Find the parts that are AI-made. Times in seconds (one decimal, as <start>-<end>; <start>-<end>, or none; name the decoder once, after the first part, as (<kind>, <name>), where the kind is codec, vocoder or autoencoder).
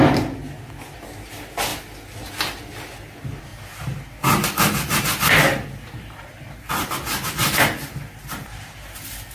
none